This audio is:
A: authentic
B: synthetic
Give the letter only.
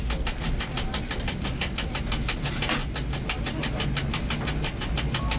A